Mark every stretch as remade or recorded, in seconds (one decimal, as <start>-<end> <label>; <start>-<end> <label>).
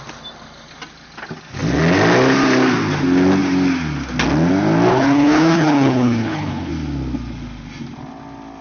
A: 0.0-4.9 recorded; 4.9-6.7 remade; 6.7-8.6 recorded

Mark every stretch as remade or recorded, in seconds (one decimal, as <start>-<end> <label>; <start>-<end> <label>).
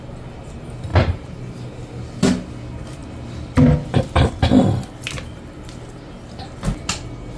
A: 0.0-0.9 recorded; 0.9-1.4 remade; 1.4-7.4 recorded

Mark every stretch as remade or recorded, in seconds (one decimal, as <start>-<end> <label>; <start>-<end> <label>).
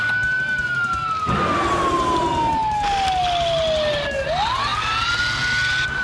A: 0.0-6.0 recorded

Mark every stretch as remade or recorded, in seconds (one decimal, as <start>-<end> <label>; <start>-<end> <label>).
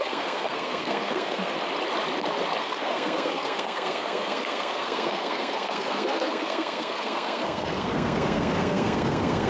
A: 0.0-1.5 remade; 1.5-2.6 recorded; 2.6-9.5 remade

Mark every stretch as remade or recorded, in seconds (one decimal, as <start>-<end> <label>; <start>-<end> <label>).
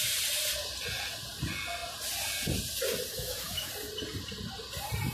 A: 0.0-3.1 recorded; 3.1-3.7 remade; 3.7-5.1 recorded